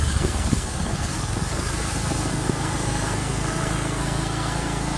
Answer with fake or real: fake